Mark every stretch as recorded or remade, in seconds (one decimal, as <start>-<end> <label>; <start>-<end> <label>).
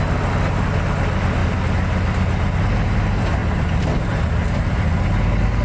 0.0-5.6 recorded